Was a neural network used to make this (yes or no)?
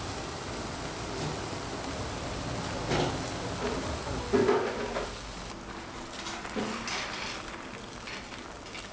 no